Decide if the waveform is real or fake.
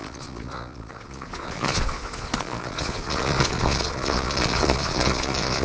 fake